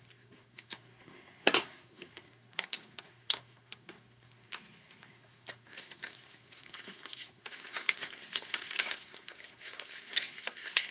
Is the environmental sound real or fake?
fake